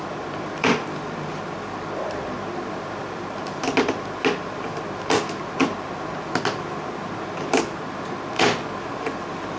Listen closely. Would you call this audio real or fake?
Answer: real